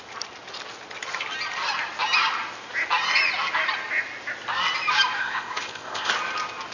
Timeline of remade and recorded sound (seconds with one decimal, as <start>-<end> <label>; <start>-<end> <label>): 0.0-5.2 recorded; 5.2-6.1 remade; 6.1-6.7 recorded